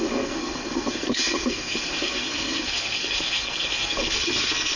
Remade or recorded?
remade